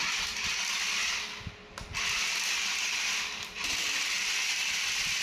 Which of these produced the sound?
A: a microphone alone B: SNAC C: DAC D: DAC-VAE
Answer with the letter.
A